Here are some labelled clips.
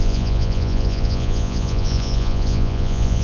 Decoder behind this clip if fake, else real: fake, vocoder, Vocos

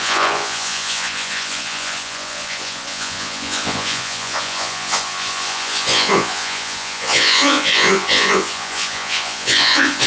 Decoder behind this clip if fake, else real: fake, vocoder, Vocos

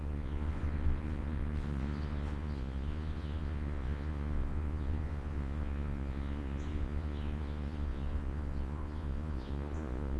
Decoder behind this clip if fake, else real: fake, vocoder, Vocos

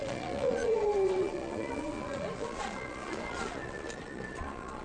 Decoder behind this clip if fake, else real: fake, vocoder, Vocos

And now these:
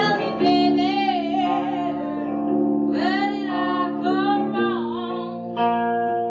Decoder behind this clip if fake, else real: real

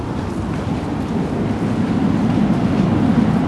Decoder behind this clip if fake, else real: real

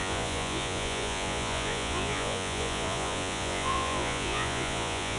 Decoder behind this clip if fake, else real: fake, vocoder, Vocos